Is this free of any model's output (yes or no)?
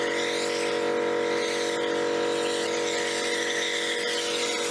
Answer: yes